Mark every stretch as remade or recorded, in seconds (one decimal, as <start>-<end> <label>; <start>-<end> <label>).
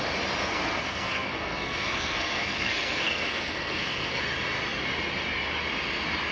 0.0-0.4 recorded; 0.4-4.2 remade; 4.2-6.3 recorded